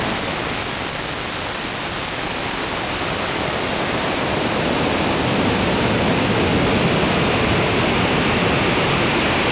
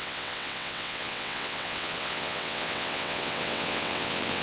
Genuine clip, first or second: first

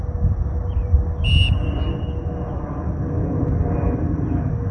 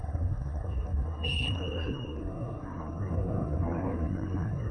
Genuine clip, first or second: first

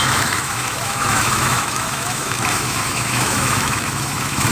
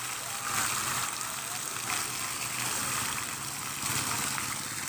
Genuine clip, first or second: second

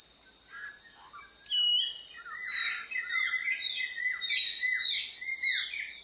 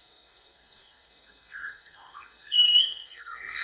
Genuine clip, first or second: first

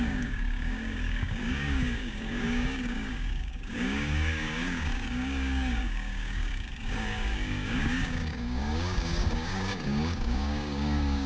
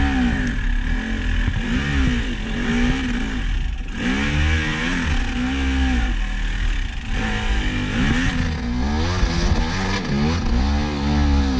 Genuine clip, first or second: second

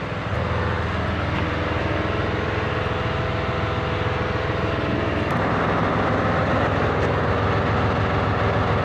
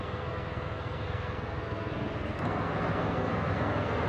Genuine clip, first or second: first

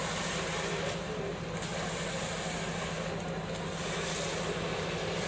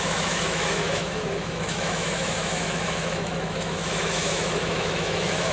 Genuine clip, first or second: first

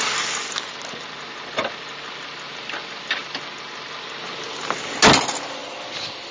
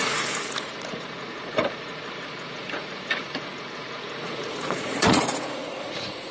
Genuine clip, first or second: first